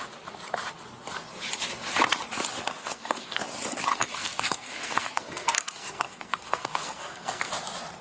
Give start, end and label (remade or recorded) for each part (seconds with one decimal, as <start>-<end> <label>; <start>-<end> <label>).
0.0-2.8 recorded; 2.8-3.4 remade; 3.4-3.9 recorded; 3.9-7.5 remade; 7.5-8.0 recorded